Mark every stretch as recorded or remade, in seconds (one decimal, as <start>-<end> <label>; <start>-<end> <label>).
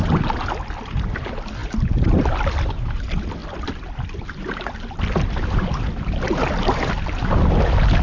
0.0-1.6 recorded; 1.6-2.7 remade; 2.7-3.4 recorded; 3.4-7.2 remade; 7.2-8.0 recorded